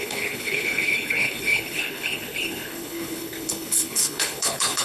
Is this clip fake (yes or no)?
yes